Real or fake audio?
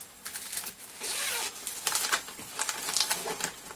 real